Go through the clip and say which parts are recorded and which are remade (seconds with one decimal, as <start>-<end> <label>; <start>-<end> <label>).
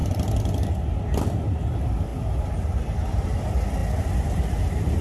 0.0-5.0 recorded